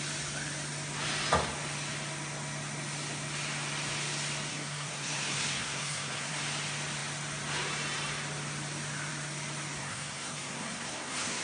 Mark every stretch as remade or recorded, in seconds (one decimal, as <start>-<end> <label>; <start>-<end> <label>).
0.0-4.5 recorded; 4.5-6.4 remade; 6.4-9.8 recorded; 9.8-11.4 remade